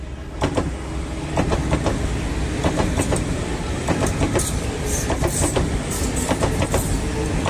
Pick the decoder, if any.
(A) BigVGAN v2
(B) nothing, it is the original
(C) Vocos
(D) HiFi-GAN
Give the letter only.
B